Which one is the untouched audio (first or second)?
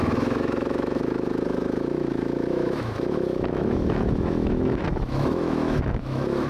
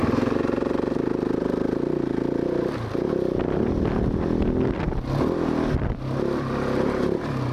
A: second